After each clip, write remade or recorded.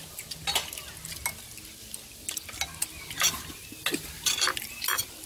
recorded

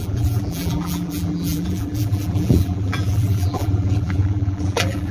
remade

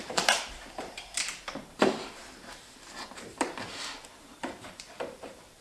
remade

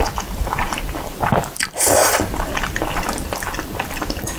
recorded